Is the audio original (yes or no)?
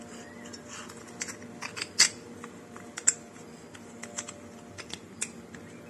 yes